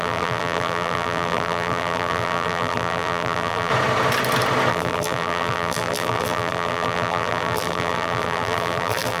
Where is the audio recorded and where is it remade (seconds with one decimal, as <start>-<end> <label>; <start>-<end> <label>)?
0.0-3.7 remade; 3.7-4.7 recorded; 4.7-9.2 remade